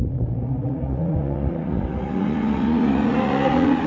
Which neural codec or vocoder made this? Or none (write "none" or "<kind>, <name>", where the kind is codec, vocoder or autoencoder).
vocoder, Vocos